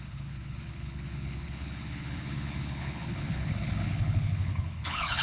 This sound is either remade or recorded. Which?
remade